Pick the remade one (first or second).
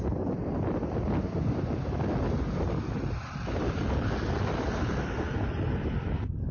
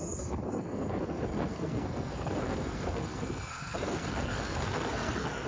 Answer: second